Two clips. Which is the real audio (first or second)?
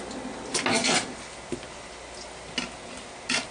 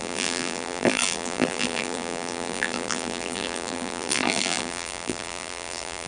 first